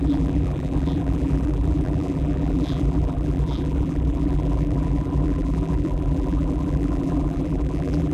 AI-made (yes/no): yes